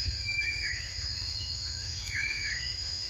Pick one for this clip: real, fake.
fake